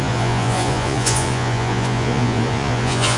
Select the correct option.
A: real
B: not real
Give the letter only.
B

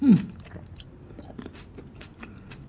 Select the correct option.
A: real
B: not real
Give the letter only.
A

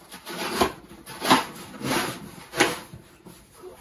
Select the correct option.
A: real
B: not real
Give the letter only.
A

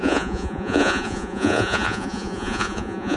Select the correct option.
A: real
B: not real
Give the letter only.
B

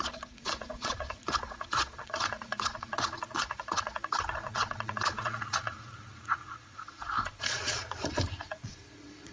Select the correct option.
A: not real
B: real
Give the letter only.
A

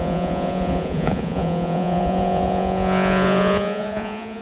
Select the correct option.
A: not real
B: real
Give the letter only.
A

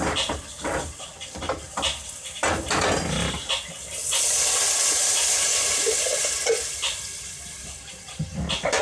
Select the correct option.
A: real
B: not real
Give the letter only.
A